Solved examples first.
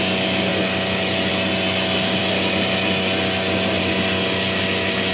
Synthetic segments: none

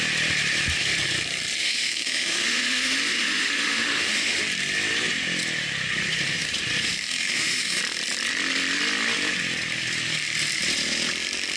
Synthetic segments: 1.6-4.4; 7.0-7.8

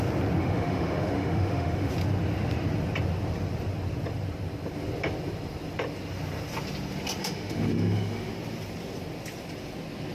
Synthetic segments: 0.4-1.9; 7.2-8.3

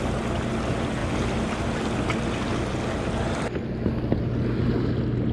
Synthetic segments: none